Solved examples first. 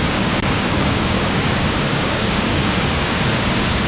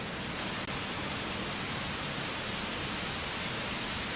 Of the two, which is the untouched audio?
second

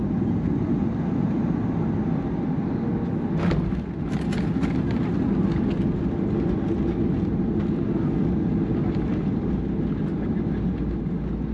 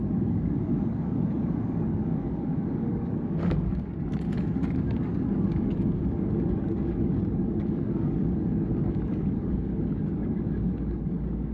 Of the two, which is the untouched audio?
first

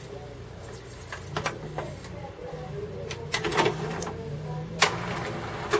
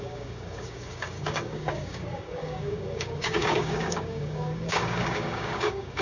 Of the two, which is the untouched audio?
first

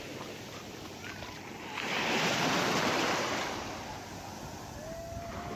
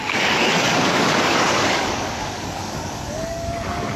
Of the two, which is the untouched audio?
first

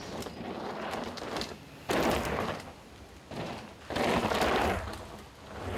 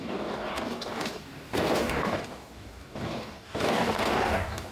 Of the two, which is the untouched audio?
first